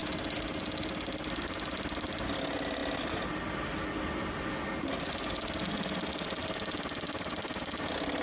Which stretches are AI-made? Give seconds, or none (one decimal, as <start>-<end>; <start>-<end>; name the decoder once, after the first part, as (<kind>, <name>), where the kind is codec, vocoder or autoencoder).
none